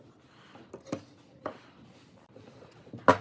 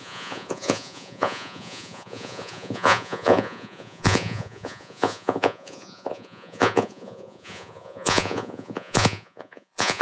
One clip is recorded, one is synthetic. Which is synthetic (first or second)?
second